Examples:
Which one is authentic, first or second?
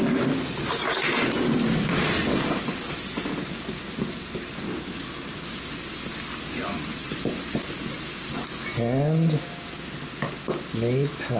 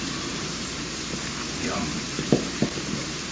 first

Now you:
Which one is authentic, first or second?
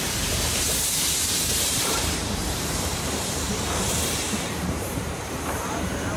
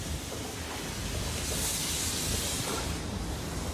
second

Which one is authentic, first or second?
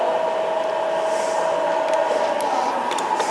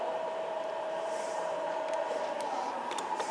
first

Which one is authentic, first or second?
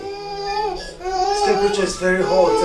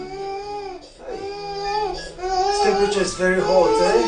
second